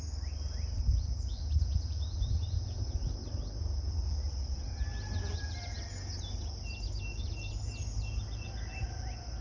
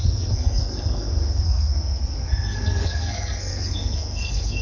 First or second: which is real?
first